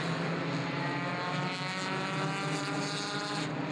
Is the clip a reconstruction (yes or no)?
no